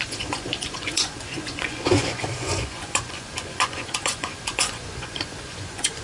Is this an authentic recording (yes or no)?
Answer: no